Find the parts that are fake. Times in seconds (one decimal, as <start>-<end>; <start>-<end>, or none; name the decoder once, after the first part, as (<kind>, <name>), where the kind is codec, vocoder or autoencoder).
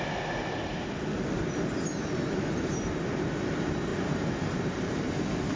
3.9-5.1 (vocoder, BigVGAN v2)